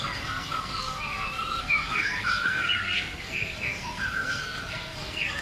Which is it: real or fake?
fake